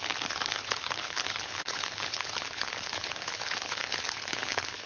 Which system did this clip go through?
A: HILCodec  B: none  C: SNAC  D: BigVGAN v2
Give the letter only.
A